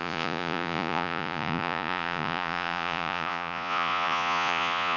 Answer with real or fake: fake